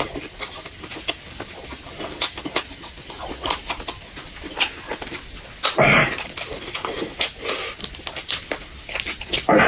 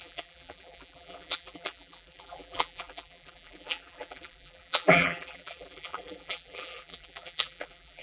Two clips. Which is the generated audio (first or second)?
second